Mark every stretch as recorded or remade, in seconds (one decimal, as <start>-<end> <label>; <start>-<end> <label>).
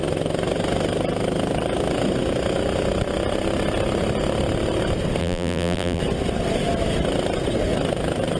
0.0-5.2 recorded; 5.2-6.0 remade; 6.0-8.4 recorded